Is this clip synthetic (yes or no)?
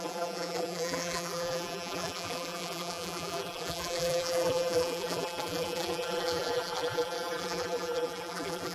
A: yes